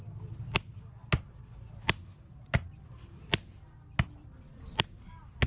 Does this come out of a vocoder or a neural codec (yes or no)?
no